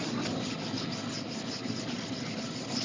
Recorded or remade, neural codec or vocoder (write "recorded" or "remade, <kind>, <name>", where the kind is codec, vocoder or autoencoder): recorded